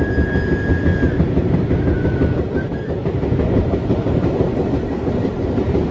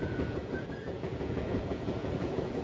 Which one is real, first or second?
first